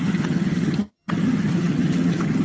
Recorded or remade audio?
remade